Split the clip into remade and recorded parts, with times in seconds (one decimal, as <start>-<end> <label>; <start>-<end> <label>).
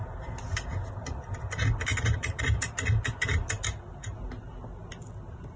0.0-5.6 recorded